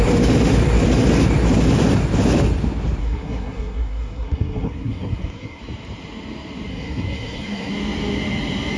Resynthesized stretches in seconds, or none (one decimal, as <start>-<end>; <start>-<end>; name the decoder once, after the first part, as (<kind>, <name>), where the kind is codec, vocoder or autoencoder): 3.0-5.6 (codec, SNAC); 6.7-7.7